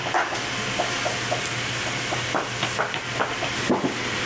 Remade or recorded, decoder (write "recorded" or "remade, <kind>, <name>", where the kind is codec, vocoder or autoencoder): recorded